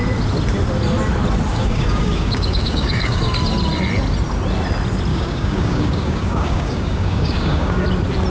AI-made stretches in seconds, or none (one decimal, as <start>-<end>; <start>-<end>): 1.5-3.2; 5.1-7.8